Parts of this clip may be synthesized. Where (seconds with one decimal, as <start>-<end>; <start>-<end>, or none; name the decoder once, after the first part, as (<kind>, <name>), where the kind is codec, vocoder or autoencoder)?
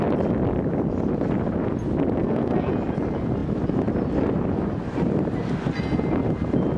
2.2-2.7 (codec, SNAC)